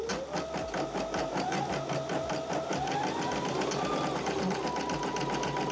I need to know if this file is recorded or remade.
recorded